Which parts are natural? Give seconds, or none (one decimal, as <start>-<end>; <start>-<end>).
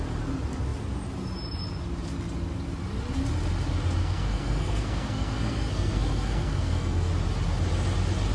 0.0-4.0; 7.1-8.3